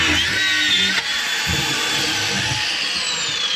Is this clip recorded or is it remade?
recorded